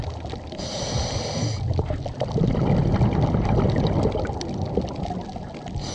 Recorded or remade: recorded